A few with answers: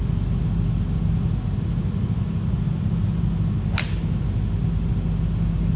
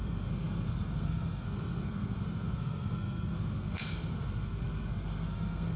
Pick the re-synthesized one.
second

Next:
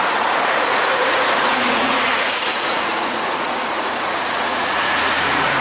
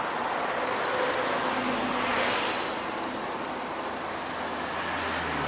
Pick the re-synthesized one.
first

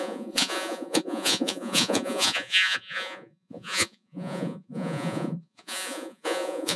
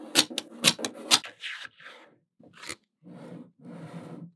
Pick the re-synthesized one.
first